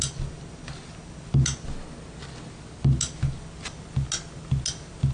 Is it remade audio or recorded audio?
recorded